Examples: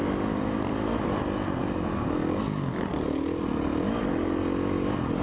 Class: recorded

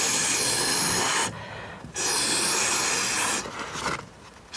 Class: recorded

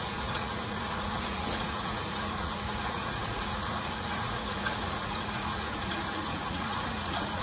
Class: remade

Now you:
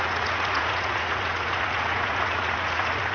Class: remade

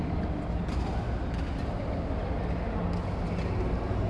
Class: recorded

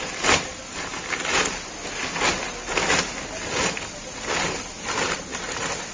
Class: recorded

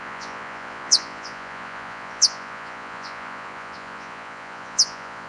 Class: remade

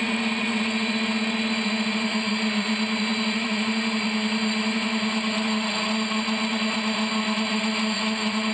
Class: remade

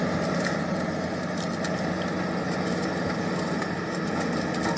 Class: recorded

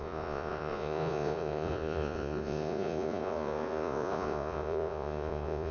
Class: remade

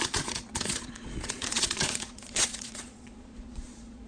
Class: remade